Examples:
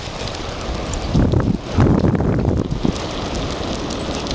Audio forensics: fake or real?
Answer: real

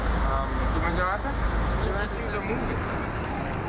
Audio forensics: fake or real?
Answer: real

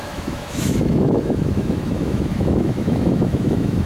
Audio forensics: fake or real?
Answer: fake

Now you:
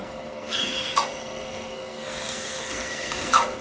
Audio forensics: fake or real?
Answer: fake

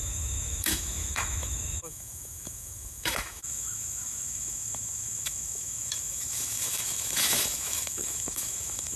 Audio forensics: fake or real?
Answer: fake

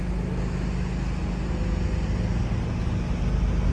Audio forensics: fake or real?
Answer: real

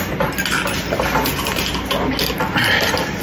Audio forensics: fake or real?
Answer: real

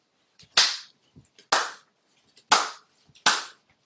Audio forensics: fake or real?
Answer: real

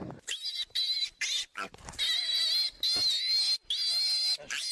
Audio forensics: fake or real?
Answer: real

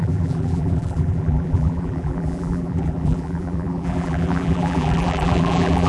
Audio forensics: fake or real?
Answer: fake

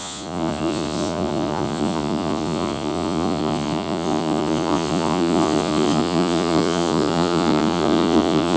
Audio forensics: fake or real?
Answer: fake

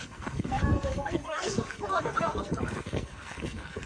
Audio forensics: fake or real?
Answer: fake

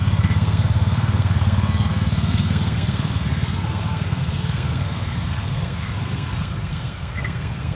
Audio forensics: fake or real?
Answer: fake